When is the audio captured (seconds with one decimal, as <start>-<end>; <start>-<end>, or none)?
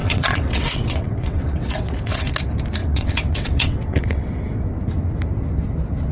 2.3-2.8; 4.3-6.1